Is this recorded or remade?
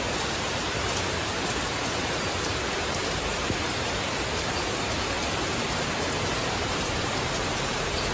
remade